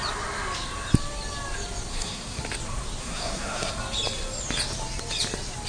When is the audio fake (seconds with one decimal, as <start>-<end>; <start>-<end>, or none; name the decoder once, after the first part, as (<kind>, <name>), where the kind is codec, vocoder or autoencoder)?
1.9-2.4 (codec, SNAC); 3.0-3.7